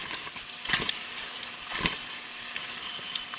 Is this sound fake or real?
real